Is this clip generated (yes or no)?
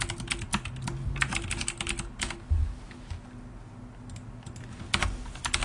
no